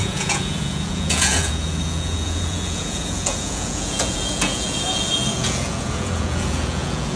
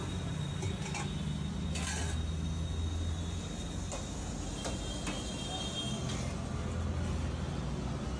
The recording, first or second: second